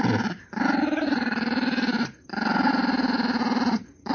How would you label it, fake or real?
fake